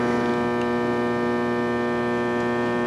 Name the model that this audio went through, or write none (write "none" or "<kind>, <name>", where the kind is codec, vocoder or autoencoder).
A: none